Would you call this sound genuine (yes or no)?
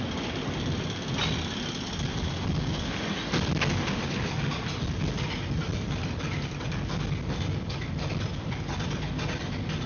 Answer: yes